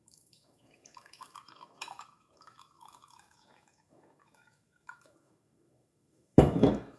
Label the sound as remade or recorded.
remade